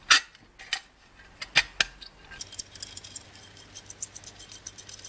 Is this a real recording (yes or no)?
yes